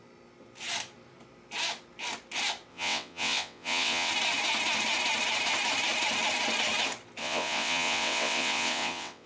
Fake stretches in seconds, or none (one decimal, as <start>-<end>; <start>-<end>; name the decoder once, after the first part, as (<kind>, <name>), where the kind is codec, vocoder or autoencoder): 2.7-4.1 (vocoder, WaveNeXt); 7.2-9.3